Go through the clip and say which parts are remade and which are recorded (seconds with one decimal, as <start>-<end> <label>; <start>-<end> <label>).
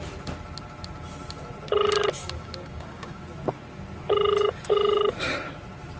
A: 0.0-2.2 recorded; 2.2-3.2 remade; 3.2-6.0 recorded